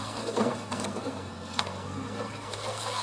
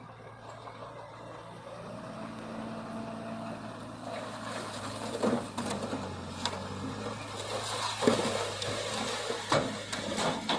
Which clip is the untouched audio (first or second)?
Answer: second